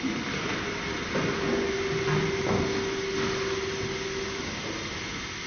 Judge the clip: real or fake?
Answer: real